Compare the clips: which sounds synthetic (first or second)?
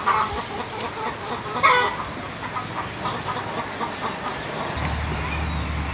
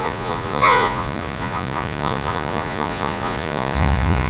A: second